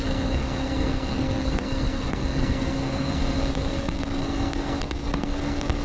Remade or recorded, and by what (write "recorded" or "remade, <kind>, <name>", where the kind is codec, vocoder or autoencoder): remade, codec, SNAC